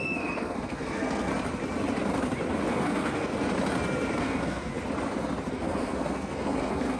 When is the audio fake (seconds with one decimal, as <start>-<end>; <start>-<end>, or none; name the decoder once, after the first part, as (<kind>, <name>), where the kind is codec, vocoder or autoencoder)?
0.0-1.3 (codec, SNAC); 2.7-3.3; 4.2-4.7; 5.5-7.0

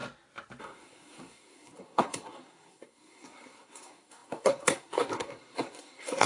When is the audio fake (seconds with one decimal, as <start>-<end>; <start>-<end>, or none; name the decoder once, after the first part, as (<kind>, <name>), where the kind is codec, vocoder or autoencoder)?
0.6-6.3 (codec, SNAC)

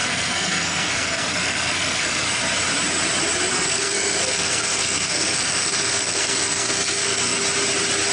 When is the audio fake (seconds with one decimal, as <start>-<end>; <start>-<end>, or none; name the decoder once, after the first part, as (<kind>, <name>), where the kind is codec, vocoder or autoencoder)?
0.0-2.4 (codec, SNAC); 3.5-7.4

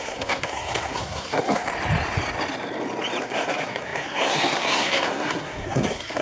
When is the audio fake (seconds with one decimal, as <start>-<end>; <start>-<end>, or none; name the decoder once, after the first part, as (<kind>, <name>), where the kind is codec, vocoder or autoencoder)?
0.0-1.7 (codec, SNAC); 3.2-6.2

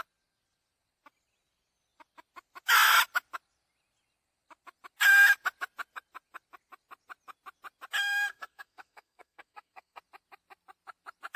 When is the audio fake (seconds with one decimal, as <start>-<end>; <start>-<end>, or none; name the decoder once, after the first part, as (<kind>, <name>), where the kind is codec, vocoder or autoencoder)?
8.0-10.0 (codec, SNAC)